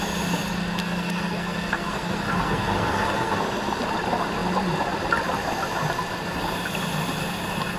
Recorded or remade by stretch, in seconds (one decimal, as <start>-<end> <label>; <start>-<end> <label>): 0.0-0.8 recorded; 0.8-3.4 remade; 3.4-7.8 recorded